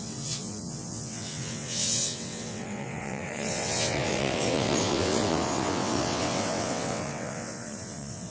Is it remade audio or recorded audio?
remade